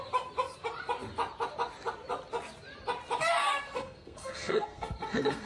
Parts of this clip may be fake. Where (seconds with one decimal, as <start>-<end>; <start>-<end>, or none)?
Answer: 3.4-5.5